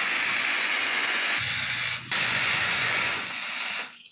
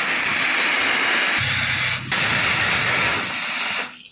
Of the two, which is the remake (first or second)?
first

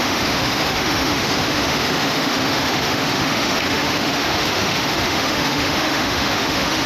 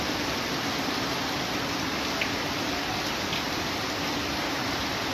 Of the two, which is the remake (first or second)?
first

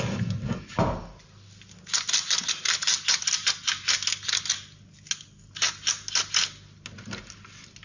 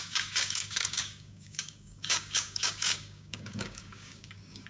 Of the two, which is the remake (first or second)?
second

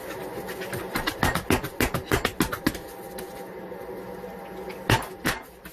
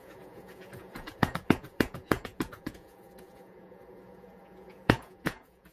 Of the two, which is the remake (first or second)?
second